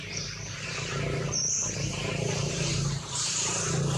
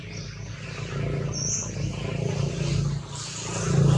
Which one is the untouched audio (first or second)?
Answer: second